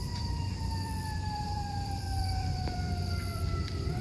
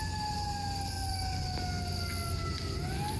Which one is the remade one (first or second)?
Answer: first